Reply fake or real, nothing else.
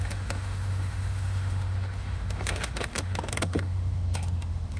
fake